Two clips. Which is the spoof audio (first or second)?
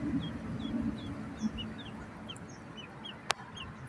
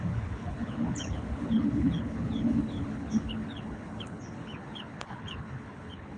second